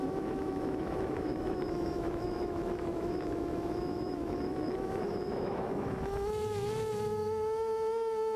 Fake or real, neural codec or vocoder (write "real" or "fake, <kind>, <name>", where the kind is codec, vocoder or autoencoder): fake, autoencoder, DAC-VAE